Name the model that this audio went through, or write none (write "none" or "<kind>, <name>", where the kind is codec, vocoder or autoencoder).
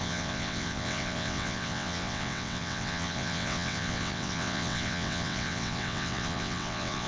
vocoder, WaveNeXt